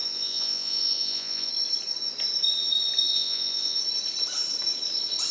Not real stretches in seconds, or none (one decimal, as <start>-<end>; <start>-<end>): 0.0-1.5; 3.1-3.8